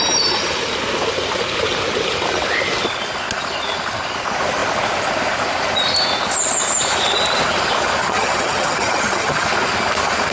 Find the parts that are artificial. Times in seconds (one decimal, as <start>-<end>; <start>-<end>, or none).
8.0-9.5